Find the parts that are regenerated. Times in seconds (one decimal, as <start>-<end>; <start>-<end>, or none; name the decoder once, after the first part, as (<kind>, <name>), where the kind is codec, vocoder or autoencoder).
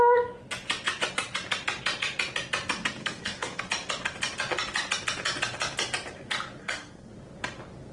3.0-3.6 (codec, SNAC); 6.6-7.1